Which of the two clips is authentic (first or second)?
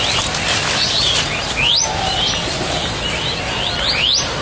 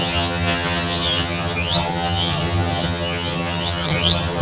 first